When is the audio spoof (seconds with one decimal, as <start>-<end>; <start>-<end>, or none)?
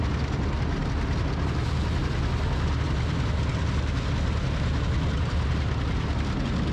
none